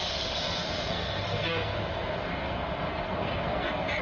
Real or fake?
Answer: fake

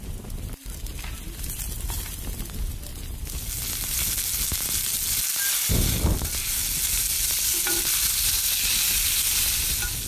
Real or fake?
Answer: real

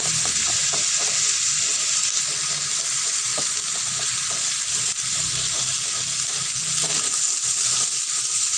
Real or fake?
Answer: real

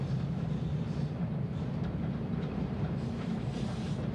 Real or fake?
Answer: fake